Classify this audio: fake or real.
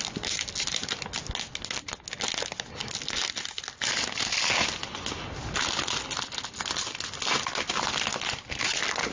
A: real